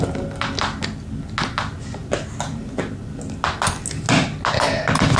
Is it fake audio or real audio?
real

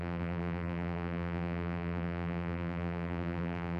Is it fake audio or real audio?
fake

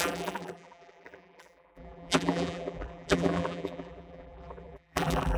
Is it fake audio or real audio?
fake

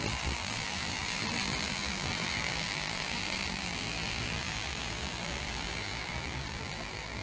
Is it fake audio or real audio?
fake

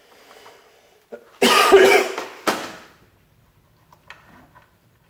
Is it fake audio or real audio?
real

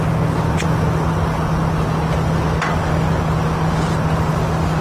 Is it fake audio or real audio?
real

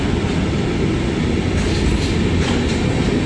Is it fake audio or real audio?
real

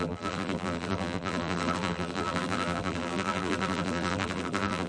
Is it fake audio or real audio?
fake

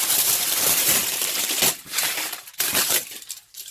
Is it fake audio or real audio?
fake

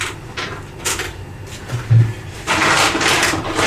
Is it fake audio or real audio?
fake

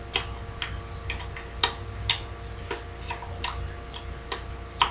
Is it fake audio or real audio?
real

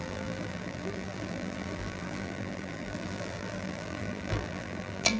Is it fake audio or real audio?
fake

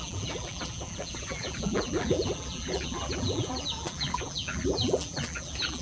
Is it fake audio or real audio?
fake